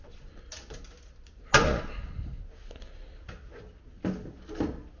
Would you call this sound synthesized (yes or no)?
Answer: no